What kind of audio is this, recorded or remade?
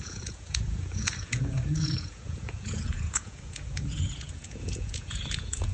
remade